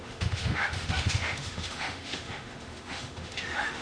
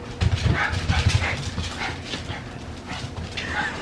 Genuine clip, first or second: second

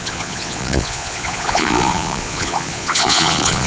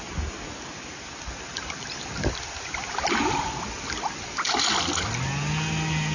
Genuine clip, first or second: second